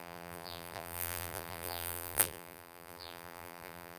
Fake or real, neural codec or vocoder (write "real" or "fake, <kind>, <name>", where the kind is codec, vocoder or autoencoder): fake, vocoder, BigVGAN v2